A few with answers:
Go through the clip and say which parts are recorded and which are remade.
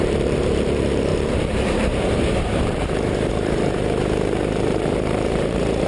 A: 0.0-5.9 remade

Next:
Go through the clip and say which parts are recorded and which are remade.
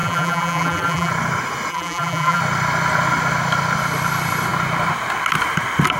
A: 0.0-1.1 remade; 1.1-1.7 recorded; 1.7-2.4 remade; 2.4-6.0 recorded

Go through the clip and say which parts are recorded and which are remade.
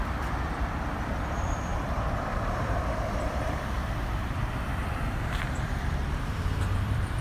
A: 0.0-7.2 remade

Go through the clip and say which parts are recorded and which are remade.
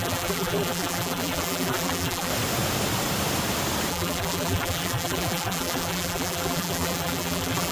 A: 0.0-2.3 remade; 2.3-3.9 recorded; 3.9-7.7 remade